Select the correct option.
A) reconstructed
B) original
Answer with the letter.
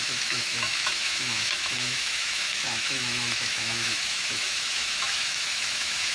A